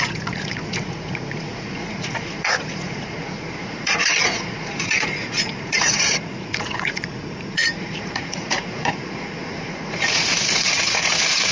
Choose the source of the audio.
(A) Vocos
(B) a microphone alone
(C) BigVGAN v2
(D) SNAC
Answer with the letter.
A